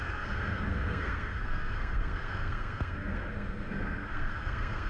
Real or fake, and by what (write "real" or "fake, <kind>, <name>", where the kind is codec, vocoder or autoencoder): fake, codec, SNAC